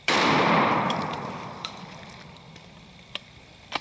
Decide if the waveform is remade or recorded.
remade